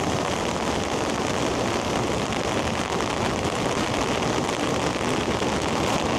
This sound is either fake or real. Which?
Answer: real